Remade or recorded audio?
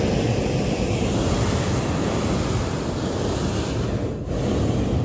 recorded